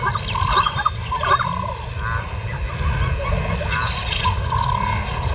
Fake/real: real